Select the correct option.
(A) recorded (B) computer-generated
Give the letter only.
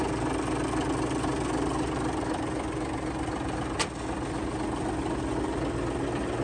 A